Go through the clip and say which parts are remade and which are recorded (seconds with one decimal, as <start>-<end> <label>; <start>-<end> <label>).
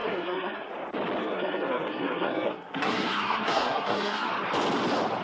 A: 0.0-0.7 remade; 0.7-1.2 recorded; 1.2-4.3 remade; 4.3-5.2 recorded